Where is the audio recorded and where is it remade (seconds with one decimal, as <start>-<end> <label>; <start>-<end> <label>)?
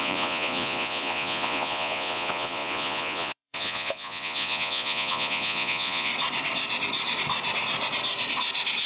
0.0-6.1 remade; 6.1-8.9 recorded